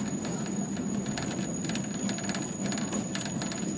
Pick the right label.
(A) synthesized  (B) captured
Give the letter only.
B